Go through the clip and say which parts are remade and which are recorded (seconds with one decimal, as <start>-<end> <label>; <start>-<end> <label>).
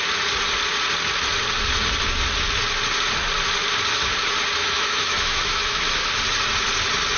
0.0-4.6 recorded; 4.6-5.9 remade; 5.9-7.2 recorded